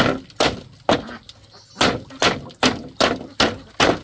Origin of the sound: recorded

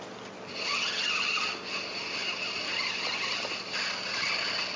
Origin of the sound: recorded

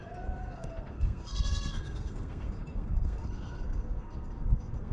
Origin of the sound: remade